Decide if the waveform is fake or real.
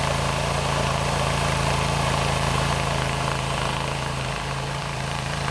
fake